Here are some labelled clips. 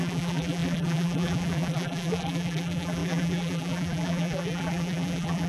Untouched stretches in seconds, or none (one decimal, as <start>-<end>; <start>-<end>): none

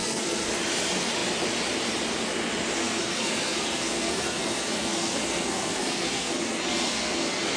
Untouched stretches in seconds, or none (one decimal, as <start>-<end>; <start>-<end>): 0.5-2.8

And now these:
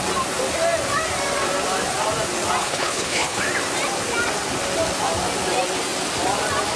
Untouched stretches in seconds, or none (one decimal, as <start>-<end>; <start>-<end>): 0.0-2.6; 3.4-6.8